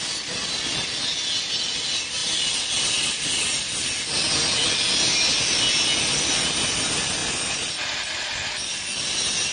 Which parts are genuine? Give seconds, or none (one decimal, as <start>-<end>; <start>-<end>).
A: 0.0-9.5